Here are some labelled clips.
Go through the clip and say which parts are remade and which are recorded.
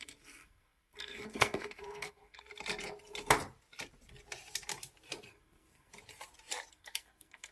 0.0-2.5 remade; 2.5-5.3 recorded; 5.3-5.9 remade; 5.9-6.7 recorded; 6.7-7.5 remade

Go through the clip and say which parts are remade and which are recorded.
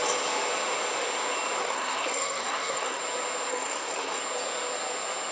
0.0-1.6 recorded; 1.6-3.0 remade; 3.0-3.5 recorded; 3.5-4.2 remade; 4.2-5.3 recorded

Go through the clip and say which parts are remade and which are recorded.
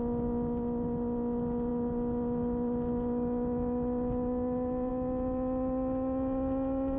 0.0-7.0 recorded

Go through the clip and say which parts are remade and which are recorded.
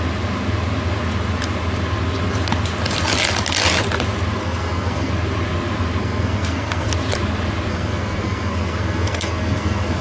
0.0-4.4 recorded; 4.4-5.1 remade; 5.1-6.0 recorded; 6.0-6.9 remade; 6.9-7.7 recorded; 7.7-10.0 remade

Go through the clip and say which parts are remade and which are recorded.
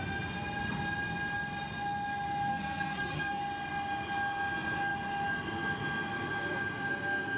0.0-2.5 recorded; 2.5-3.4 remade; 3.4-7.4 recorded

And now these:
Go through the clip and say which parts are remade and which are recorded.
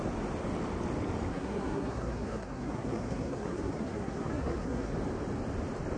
0.0-1.3 recorded; 1.3-4.9 remade; 4.9-6.0 recorded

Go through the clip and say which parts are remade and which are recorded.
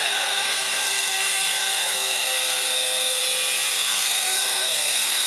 0.0-3.2 remade; 3.2-3.7 recorded; 3.7-5.3 remade